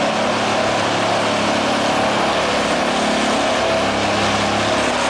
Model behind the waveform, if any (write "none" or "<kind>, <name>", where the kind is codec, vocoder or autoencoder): none